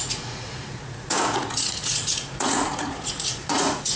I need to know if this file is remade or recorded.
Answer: remade